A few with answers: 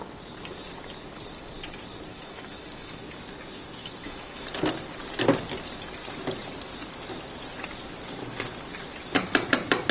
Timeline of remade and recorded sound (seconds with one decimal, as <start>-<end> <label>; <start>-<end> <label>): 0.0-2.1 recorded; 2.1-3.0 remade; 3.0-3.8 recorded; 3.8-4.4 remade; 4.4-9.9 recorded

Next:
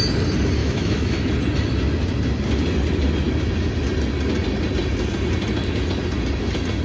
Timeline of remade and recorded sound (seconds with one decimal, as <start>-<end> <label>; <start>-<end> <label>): 0.0-0.6 recorded; 0.6-1.3 remade; 1.3-6.8 recorded

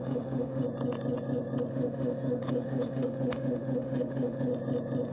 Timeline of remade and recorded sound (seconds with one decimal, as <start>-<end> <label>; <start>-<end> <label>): 0.0-0.6 remade; 0.6-1.7 recorded; 1.7-4.5 remade; 4.5-5.1 recorded

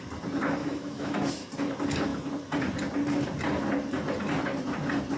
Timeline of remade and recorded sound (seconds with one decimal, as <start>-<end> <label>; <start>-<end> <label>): 0.0-0.6 recorded; 0.6-1.3 remade; 1.3-5.2 recorded

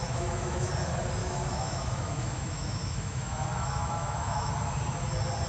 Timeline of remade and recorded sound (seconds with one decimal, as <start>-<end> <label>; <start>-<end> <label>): 0.0-0.7 remade; 0.7-1.2 recorded; 1.2-4.5 remade; 4.5-5.5 recorded

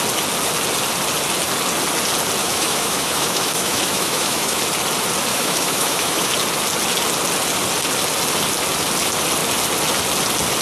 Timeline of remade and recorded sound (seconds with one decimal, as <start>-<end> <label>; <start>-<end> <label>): 0.0-2.4 recorded; 2.4-4.6 remade; 4.6-5.3 recorded; 5.3-6.3 remade; 6.3-10.6 recorded

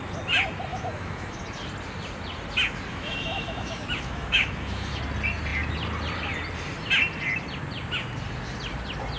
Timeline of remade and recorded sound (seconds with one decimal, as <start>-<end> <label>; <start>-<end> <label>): 0.0-0.7 recorded; 0.7-1.4 remade; 1.4-2.9 recorded; 2.9-5.0 remade; 5.0-9.2 recorded